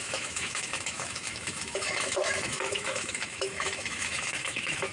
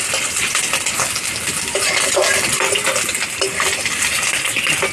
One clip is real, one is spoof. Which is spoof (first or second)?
first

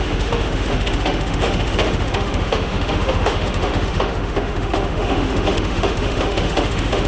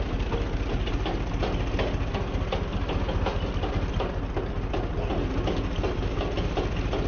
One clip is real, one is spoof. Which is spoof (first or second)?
first